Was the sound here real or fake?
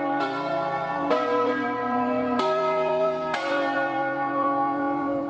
fake